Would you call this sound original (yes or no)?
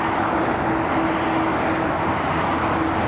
yes